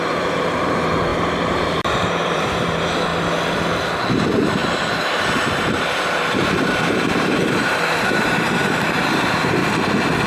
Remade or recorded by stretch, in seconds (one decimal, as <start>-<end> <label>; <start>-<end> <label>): 0.0-3.1 remade; 3.1-4.1 recorded; 4.1-9.6 remade; 9.6-10.3 recorded